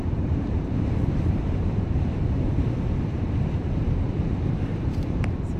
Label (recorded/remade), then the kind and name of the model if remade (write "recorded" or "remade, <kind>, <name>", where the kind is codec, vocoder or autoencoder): remade, vocoder, BigVGAN v2